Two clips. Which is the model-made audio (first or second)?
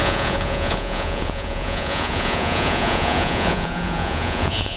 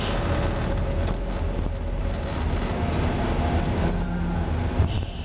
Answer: first